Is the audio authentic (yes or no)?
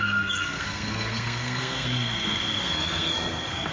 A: no